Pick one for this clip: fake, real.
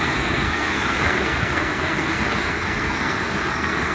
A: fake